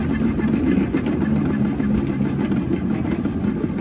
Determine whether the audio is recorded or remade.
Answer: recorded